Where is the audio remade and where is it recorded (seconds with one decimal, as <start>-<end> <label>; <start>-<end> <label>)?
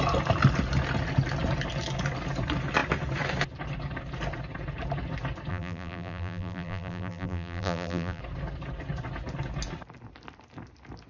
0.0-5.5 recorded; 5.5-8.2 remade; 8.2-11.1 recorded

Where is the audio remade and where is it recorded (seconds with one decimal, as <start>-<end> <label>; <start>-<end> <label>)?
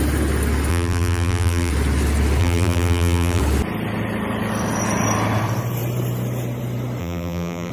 0.0-0.7 recorded; 0.7-1.7 remade; 1.7-2.4 recorded; 2.4-3.4 remade; 3.4-7.0 recorded; 7.0-7.7 remade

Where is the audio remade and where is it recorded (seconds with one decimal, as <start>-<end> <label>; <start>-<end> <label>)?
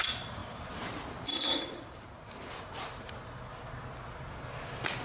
0.0-0.4 recorded; 0.4-3.4 remade; 3.4-5.0 recorded